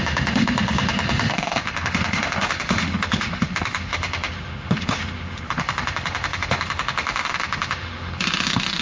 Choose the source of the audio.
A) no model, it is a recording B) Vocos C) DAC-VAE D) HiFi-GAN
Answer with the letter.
C